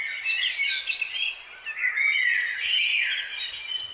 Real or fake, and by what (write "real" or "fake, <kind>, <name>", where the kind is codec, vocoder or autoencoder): real